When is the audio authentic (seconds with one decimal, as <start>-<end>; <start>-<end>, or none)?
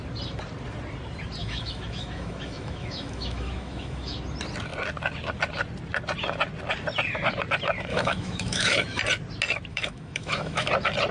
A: 0.0-1.4; 4.2-7.9; 9.0-9.7; 10.7-11.1